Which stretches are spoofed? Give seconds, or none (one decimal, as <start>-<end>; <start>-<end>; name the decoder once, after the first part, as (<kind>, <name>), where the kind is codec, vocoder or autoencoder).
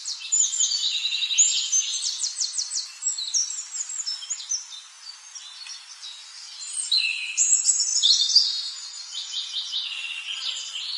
none